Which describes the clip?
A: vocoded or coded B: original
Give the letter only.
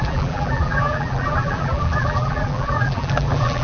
A